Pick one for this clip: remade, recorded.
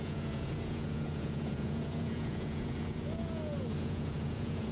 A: remade